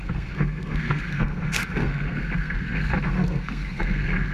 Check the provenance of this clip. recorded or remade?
remade